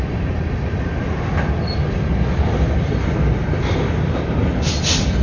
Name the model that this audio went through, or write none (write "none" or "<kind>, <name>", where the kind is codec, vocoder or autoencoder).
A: none